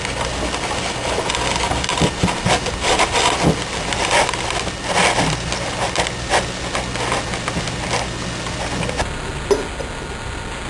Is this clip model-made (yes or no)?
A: no